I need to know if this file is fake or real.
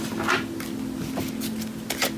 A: real